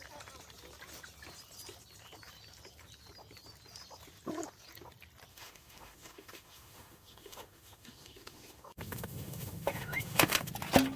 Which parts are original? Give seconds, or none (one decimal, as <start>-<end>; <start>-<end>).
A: 0.0-5.3; 10.5-11.0